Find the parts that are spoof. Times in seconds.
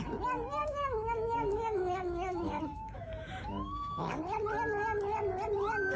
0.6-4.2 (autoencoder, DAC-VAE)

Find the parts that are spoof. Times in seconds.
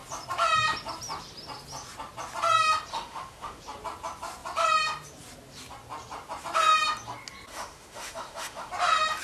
2.9-3.6 (autoencoder, DAC-VAE); 7.5-8.7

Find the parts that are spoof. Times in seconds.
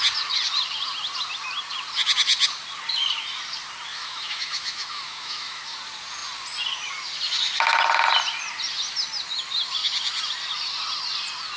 3.9-5.7 (autoencoder, DAC-VAE)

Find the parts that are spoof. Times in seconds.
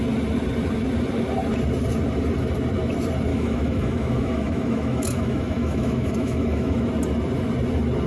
3.3-6.9 (autoencoder, DAC-VAE)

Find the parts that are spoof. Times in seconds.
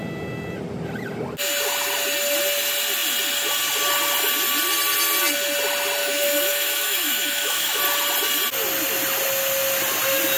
6.0-7.8 (autoencoder, DAC-VAE)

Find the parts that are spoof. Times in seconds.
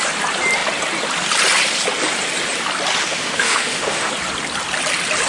3.0-4.1 (autoencoder, DAC-VAE)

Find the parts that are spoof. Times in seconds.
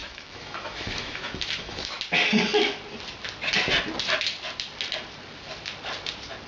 0.0-2.0 (autoencoder, DAC-VAE)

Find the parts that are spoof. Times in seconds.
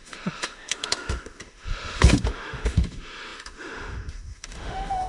0.0-5.1 (autoencoder, DAC-VAE)